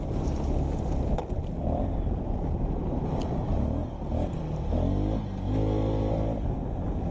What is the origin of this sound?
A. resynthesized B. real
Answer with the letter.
B